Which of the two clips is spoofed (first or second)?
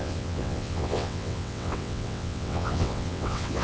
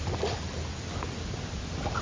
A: first